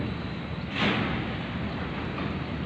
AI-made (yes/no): no